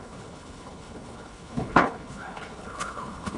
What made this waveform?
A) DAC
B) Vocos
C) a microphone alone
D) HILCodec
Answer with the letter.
D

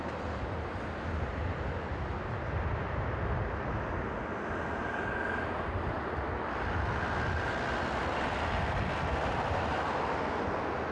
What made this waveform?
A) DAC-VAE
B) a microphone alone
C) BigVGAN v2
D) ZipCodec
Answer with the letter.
B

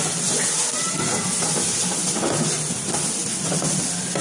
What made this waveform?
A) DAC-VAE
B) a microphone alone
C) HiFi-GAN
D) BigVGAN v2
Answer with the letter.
B